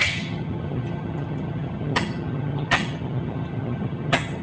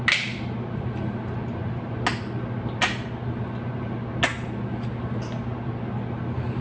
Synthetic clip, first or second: first